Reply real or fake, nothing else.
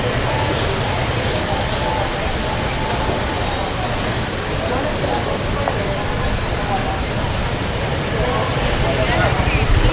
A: real